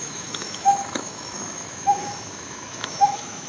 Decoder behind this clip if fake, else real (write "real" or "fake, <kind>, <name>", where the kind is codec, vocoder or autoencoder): fake, autoencoder, DAC-VAE